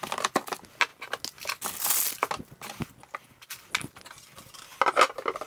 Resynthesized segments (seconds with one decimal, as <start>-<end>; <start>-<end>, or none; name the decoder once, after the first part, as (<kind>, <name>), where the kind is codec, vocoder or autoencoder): none